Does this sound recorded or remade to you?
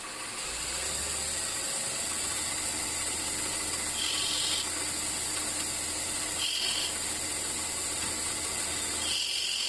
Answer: recorded